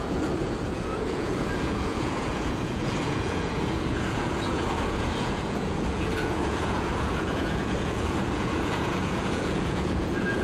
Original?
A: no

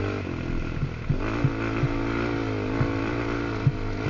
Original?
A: yes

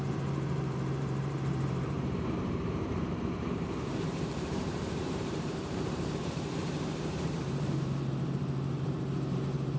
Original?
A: no